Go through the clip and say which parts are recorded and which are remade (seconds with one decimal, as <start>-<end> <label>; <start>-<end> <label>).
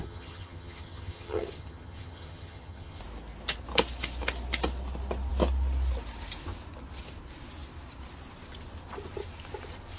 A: 0.0-3.0 remade; 3.0-10.0 recorded